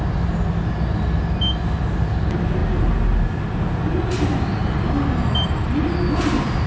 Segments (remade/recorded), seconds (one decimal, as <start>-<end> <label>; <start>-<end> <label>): 0.0-6.7 recorded